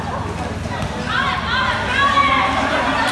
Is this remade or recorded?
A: recorded